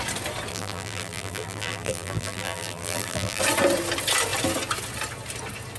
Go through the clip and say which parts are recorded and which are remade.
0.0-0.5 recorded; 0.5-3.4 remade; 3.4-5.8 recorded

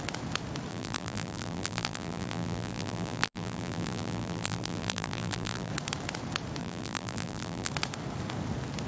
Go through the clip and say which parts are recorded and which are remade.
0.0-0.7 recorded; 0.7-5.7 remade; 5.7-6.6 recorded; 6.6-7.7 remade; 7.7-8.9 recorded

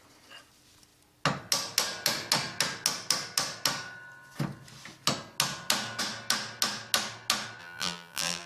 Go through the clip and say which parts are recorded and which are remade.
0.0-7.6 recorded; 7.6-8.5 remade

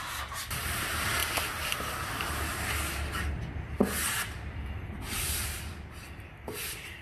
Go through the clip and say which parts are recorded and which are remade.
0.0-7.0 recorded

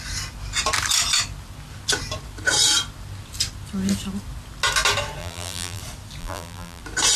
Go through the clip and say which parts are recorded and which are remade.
0.0-5.2 recorded; 5.2-5.8 remade; 5.8-6.2 recorded; 6.2-6.8 remade; 6.8-7.2 recorded